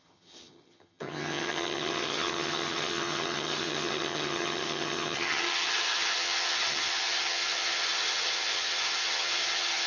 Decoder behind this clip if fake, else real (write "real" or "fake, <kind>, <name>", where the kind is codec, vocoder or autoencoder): fake, vocoder, HiFi-GAN